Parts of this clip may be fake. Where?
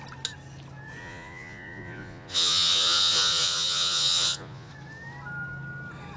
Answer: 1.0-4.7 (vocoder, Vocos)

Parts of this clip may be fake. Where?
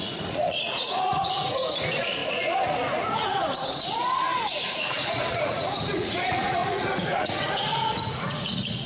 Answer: 0.0-8.9 (vocoder, Vocos)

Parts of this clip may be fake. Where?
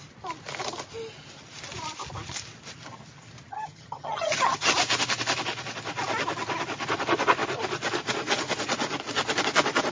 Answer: 3.5-4.7 (vocoder, HiFi-GAN)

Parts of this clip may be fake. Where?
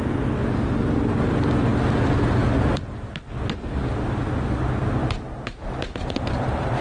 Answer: none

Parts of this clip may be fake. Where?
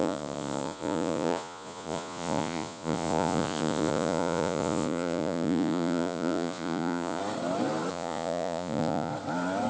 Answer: 0.0-7.2 (vocoder, Vocos); 7.9-9.1